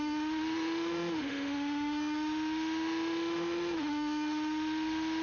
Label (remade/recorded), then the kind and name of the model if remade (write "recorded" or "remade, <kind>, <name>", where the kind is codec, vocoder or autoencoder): remade, autoencoder, DAC-VAE